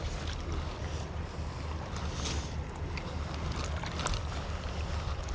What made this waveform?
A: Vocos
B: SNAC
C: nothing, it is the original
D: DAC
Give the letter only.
C